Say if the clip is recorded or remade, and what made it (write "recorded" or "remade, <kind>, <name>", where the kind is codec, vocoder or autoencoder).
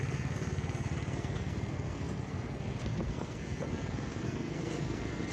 remade, codec, SNAC